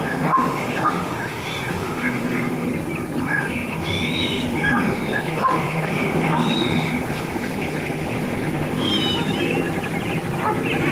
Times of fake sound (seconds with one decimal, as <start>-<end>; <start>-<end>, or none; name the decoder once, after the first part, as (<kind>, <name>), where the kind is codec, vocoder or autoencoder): 0.0-2.7 (autoencoder, DAC-VAE); 3.2-8.9

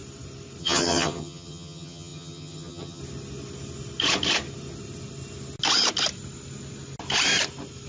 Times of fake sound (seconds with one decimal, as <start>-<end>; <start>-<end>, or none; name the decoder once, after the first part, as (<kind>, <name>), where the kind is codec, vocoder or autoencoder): 0.6-3.0 (vocoder, HiFi-GAN)

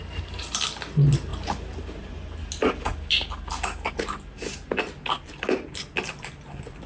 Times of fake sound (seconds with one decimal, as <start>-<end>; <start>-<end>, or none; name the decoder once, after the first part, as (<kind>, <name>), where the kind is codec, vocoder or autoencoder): none

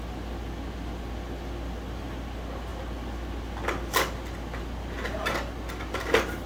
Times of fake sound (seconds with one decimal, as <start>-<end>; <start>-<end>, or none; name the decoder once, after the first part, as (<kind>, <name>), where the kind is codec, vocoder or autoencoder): none

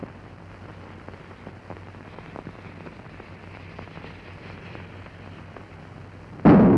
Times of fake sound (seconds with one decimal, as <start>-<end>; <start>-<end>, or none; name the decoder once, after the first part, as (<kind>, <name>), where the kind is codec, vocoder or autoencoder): 0.0-0.5 (vocoder, BigVGAN v2)

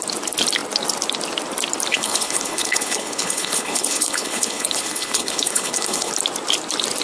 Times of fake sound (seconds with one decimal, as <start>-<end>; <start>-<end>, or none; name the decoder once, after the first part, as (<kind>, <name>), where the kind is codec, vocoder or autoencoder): 1.9-6.1 (codec, HILCodec)

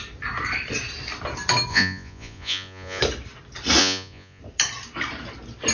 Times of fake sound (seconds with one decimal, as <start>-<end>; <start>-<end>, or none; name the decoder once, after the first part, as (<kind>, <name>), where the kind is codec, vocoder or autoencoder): 1.7-3.0 (vocoder, Vocos); 3.8-4.4